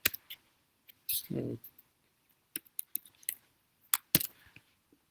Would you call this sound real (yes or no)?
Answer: yes